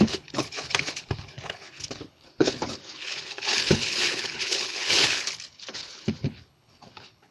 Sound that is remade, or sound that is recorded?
remade